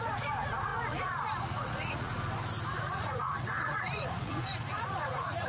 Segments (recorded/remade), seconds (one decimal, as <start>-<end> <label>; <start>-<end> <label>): 0.0-2.1 remade; 2.1-2.7 recorded; 2.7-5.5 remade